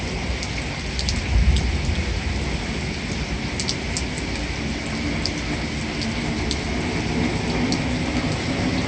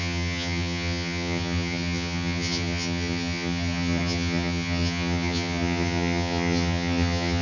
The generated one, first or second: second